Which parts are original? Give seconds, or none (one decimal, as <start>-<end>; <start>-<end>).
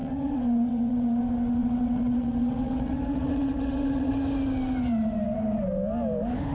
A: 1.2-1.6; 4.1-6.5